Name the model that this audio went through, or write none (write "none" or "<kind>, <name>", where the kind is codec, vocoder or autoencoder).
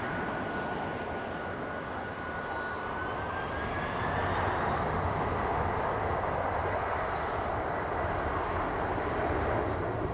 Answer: none